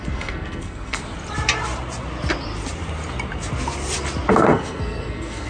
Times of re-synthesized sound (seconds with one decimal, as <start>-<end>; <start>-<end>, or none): 0.0-1.0; 4.3-5.5